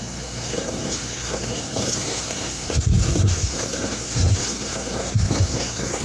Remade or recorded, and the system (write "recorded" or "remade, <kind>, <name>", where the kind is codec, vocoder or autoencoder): remade, codec, SNAC